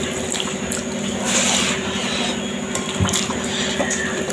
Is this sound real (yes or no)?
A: yes